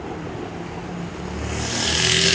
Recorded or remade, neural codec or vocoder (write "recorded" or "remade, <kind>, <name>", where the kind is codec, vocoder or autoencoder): recorded